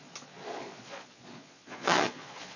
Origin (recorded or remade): remade